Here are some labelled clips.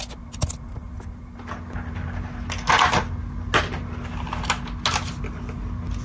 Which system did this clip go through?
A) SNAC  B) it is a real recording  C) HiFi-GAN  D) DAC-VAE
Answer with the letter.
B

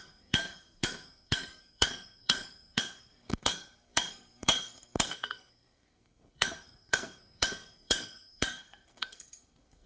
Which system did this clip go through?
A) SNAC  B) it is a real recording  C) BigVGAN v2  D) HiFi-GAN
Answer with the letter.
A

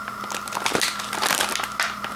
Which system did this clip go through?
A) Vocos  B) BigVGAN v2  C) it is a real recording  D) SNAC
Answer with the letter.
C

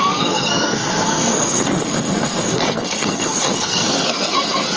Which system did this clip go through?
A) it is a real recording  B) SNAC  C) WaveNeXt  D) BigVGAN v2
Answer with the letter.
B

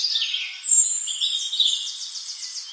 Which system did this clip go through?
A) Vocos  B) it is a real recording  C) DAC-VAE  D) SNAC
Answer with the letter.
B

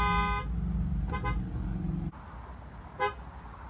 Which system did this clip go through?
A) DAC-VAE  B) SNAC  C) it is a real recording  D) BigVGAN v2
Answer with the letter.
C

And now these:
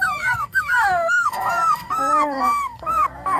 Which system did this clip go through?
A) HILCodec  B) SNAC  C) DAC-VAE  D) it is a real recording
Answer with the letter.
B